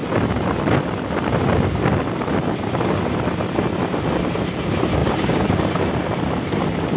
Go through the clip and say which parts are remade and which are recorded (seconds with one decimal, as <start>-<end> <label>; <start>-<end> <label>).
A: 0.0-5.0 recorded; 5.0-5.7 remade; 5.7-7.0 recorded